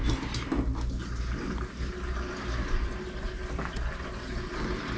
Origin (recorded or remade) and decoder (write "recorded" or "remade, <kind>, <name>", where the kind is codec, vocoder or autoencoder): recorded